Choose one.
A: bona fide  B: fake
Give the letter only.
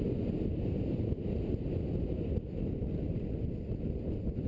A